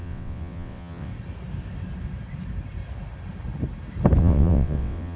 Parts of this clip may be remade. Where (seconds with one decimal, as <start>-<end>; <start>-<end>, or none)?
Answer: 0.0-1.1; 4.2-5.2

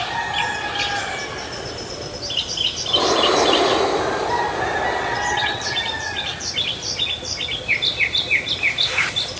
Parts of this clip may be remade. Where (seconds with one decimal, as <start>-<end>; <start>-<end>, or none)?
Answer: 5.0-5.7

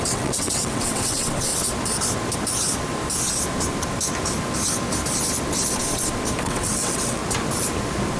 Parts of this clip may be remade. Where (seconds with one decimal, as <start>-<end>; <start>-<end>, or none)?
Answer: 0.0-1.5; 6.4-7.2